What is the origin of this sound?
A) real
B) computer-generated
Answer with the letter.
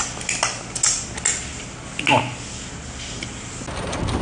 A